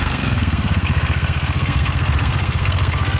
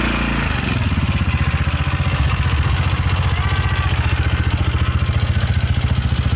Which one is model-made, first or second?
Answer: first